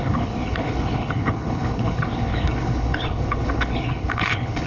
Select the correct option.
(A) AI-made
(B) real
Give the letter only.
A